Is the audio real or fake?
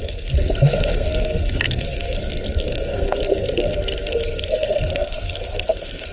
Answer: fake